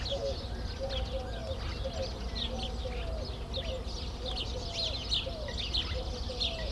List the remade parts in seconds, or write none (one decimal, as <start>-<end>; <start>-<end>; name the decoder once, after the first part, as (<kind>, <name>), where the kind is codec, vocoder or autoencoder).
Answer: none